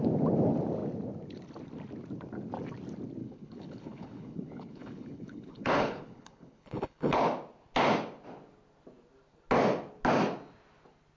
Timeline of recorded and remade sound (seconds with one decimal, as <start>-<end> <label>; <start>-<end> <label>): 0.0-3.2 recorded; 3.2-7.2 remade; 7.2-11.2 recorded